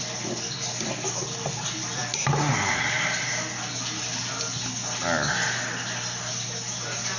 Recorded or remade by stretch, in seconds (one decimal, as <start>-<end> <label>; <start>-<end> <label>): 0.0-7.2 recorded